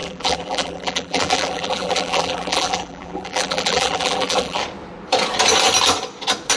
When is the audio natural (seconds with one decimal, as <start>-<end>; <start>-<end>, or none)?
4.6-6.6